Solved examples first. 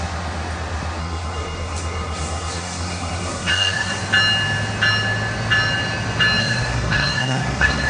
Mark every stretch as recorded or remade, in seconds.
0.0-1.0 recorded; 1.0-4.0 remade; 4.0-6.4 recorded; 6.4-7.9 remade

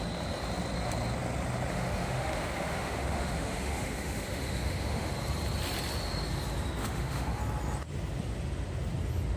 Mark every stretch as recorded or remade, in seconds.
0.0-1.7 recorded; 1.7-5.1 remade; 5.1-6.8 recorded; 6.8-7.4 remade; 7.4-9.4 recorded

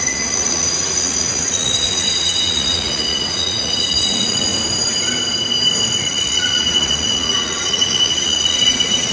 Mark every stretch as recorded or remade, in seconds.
0.0-4.5 remade; 4.5-6.0 recorded; 6.0-9.1 remade

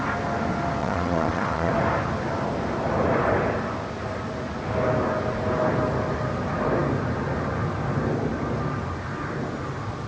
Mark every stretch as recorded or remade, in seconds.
0.0-0.8 recorded; 0.8-1.7 remade; 1.7-10.1 recorded

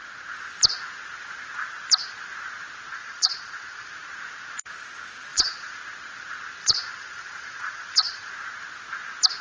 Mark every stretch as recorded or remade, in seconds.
0.0-2.9 recorded; 2.9-3.9 remade; 3.9-5.3 recorded; 5.3-5.8 remade; 5.8-6.6 recorded; 6.6-8.3 remade; 8.3-9.4 recorded

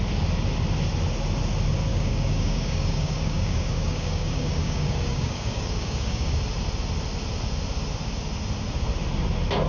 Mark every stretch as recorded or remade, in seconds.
0.0-1.9 recorded; 1.9-6.4 remade; 6.4-9.7 recorded